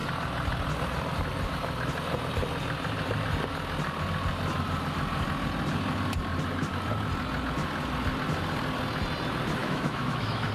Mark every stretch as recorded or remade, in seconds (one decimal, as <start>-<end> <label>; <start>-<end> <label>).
0.0-9.6 recorded; 9.6-10.5 remade